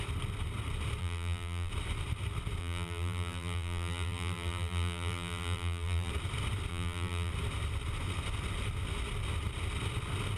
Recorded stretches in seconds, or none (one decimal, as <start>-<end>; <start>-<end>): 0.0-1.0; 1.7-2.6; 6.1-6.7; 7.3-10.4